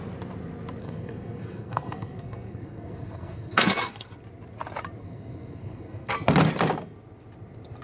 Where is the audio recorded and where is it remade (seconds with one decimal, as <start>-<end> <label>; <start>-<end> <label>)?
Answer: 0.0-0.8 recorded; 0.8-4.1 remade; 4.1-5.0 recorded; 5.0-6.1 remade; 6.1-7.8 recorded